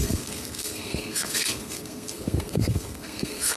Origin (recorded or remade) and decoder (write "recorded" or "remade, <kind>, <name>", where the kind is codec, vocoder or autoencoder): remade, codec, SNAC